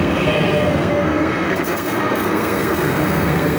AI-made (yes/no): yes